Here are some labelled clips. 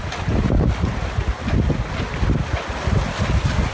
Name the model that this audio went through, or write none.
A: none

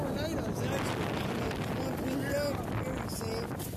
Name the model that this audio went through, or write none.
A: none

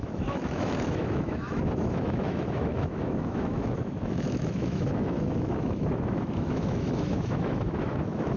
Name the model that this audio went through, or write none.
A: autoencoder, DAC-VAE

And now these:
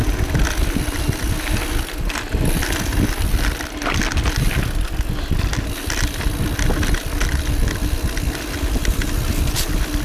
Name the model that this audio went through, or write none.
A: none